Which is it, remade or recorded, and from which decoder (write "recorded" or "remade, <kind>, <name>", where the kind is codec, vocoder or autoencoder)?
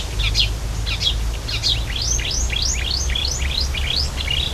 recorded